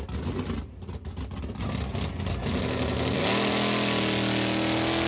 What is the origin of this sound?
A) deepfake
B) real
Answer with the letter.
B